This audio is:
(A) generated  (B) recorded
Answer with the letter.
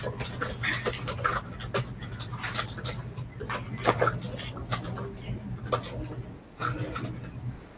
B